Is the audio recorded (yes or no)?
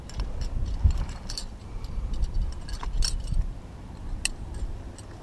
yes